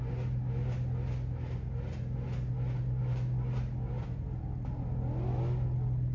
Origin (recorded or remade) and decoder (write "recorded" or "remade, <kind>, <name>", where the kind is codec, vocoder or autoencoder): recorded